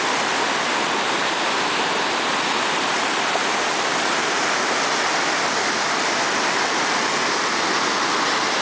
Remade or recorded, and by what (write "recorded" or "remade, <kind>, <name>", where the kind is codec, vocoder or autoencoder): recorded